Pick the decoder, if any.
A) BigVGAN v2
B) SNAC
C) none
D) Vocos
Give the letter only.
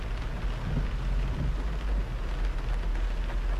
C